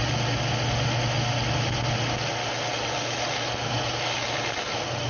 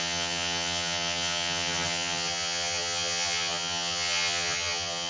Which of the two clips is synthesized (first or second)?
second